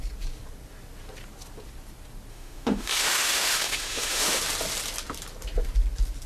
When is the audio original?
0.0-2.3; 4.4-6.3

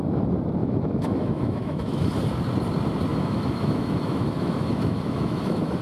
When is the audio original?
0.0-0.6; 2.1-3.1

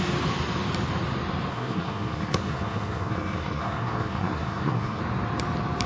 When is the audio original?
0.0-1.5; 5.0-5.9

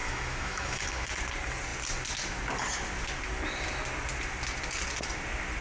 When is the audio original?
1.1-5.6

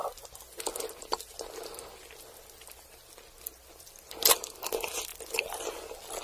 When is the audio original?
0.0-6.2

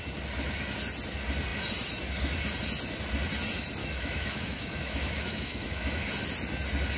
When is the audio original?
0.0-3.8; 6.1-7.0

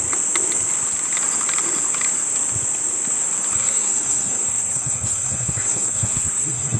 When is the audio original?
0.0-3.6

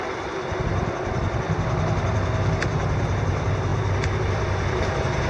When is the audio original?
0.0-5.3